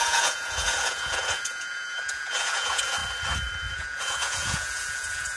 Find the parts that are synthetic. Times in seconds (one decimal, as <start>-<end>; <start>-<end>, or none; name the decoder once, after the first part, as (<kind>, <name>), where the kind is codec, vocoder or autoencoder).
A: 0.0-3.0 (vocoder, Vocos); 3.7-5.4